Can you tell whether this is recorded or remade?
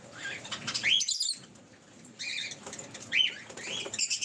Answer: recorded